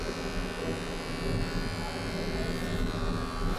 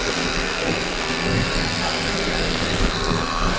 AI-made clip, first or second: second